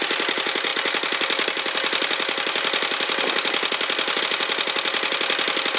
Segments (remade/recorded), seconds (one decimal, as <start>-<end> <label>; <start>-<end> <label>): 0.0-5.8 recorded